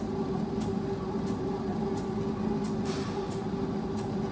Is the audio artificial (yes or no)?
no